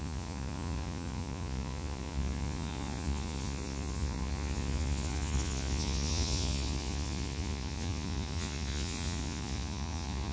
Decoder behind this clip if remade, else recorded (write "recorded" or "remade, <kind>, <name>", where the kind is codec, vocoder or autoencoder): remade, vocoder, Vocos